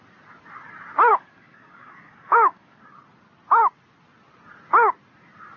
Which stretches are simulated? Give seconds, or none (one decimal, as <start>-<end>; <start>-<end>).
1.1-2.8